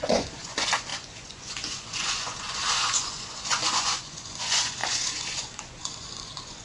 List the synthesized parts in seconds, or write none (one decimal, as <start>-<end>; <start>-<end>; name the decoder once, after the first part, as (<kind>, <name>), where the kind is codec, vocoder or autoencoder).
0.0-6.6 (vocoder, Vocos)